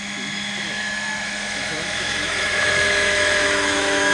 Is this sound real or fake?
fake